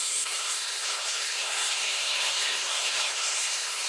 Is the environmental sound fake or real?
fake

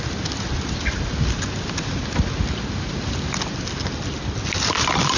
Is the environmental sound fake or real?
real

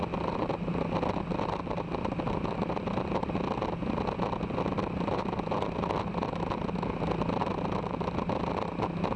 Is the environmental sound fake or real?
real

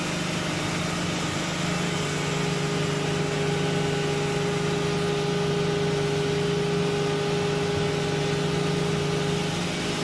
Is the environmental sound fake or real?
real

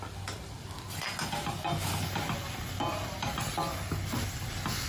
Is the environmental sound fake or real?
real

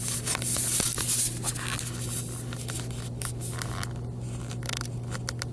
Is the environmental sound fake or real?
real